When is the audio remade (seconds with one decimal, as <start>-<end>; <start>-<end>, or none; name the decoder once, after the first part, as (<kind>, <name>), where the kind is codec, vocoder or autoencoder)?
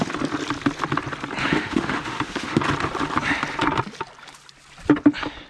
1.4-2.6 (autoencoder, DAC-VAE)